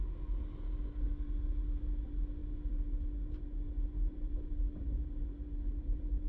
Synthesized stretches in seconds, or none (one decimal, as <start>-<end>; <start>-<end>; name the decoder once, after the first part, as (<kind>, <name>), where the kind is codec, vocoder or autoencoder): 2.4-6.3 (vocoder, BigVGAN v2)